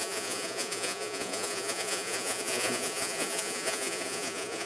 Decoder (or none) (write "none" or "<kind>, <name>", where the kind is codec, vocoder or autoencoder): vocoder, Vocos